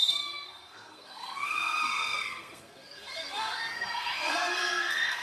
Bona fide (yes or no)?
no